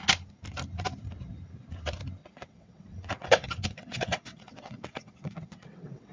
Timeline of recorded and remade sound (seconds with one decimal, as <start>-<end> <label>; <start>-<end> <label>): 0.0-2.2 recorded; 2.2-6.1 remade